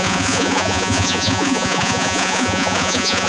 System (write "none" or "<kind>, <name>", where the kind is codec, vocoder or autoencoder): vocoder, Vocos